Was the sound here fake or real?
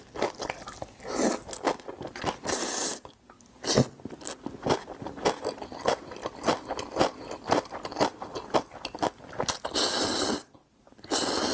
real